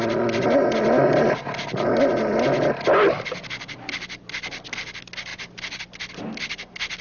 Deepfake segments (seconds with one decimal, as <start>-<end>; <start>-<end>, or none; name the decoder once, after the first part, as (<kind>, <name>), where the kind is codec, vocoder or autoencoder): 5.3-5.8 (vocoder, BigVGAN v2)